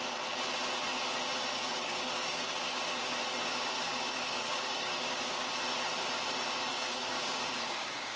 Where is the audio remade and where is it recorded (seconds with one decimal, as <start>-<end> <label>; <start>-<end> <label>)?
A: 0.0-1.5 recorded; 1.5-3.1 remade; 3.1-3.5 recorded; 3.5-5.5 remade; 5.5-6.7 recorded; 6.7-8.2 remade